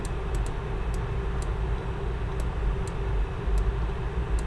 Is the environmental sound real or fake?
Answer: real